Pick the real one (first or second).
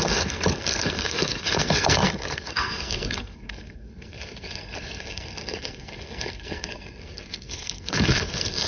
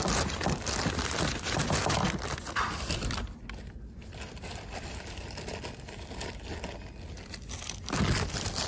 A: second